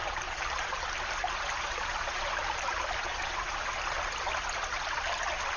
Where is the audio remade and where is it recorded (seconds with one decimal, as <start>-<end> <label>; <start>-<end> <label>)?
0.0-3.4 remade; 3.4-5.6 recorded